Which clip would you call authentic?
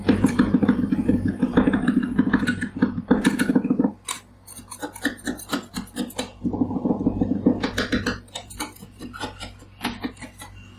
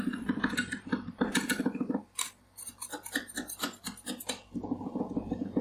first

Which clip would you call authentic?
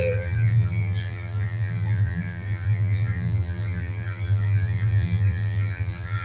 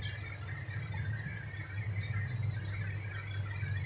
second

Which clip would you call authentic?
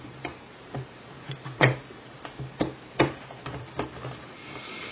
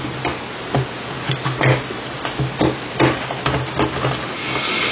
second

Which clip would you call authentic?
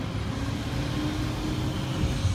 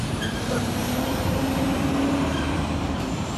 first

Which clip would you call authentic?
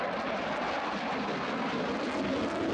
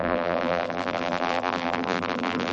first